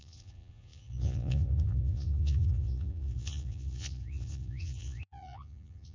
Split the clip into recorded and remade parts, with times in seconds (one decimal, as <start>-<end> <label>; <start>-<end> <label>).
0.0-5.9 remade